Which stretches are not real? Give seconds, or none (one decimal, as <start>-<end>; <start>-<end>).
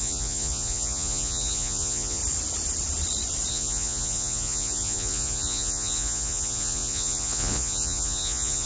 0.0-2.2; 3.5-8.7